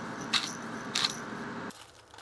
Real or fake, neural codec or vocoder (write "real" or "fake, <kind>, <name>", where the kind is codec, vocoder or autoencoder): real